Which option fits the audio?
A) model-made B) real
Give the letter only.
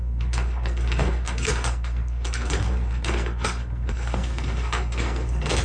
A